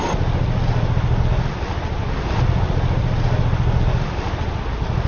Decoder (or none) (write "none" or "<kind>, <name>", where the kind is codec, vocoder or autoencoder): none